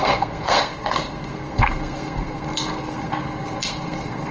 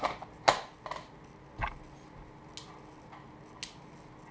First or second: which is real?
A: second